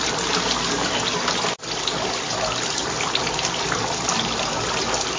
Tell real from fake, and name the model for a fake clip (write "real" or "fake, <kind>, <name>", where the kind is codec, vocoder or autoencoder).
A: real